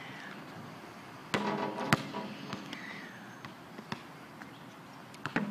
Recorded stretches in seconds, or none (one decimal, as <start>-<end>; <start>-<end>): 0.0-5.5